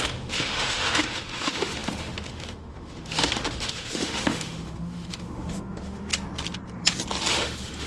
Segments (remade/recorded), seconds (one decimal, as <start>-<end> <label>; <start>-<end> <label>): 0.0-6.1 remade; 6.1-7.3 recorded; 7.3-7.9 remade

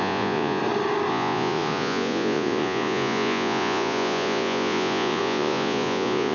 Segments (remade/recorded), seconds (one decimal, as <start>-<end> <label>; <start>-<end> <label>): 0.0-0.6 remade; 0.6-1.1 recorded; 1.1-6.3 remade

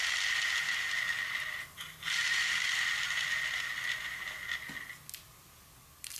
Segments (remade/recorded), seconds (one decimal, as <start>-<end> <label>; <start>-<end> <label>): 0.0-6.2 recorded

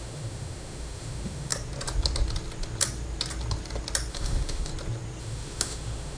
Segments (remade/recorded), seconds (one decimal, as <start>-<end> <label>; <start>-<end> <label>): 0.0-1.5 remade; 1.5-4.1 recorded; 4.1-4.7 remade; 4.7-5.2 recorded; 5.2-6.2 remade